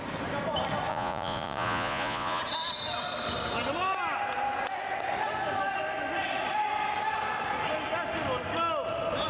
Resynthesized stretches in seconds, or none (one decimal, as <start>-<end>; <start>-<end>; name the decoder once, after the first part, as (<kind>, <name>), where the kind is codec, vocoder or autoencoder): 0.9-2.4 (vocoder, Vocos)